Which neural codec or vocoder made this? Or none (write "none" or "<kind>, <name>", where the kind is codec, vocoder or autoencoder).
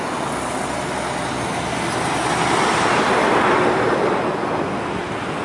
none